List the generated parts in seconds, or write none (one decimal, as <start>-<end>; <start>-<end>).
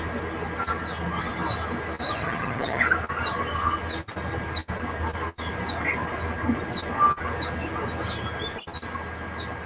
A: 2.2-2.8